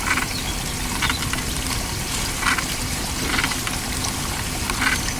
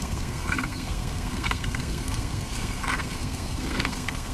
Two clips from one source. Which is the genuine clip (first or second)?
first